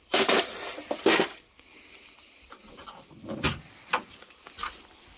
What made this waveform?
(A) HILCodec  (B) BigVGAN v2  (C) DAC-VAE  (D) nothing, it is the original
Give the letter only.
B